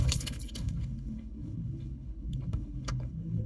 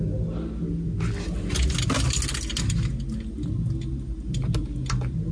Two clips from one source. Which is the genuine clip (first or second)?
second